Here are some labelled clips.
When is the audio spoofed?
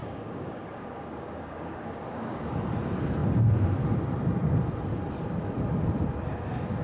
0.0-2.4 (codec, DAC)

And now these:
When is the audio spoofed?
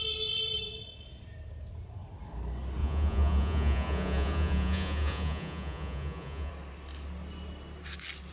2.8-6.5 (vocoder, Vocos)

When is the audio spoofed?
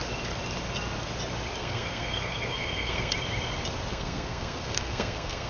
1.6-3.1 (codec, SNAC); 3.9-5.5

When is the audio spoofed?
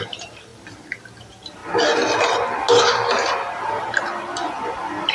0.0-1.6 (vocoder, BigVGAN v2)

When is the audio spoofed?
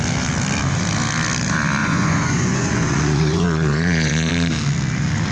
1.8-4.3 (vocoder, Vocos)